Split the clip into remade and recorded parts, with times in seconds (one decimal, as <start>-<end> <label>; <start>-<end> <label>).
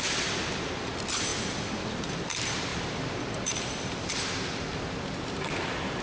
0.0-1.3 recorded; 1.3-2.1 remade; 2.1-2.7 recorded; 2.7-4.1 remade; 4.1-6.0 recorded